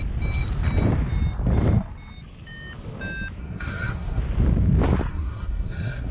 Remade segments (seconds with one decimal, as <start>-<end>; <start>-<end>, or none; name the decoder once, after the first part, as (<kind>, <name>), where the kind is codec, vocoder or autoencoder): 3.4-4.2 (codec, SNAC); 5.1-6.1